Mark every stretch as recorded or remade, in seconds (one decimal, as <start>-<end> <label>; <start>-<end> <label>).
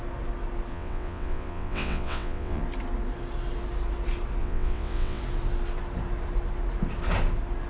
0.0-0.7 recorded; 0.7-2.6 remade; 2.6-4.4 recorded; 4.4-5.2 remade; 5.2-7.7 recorded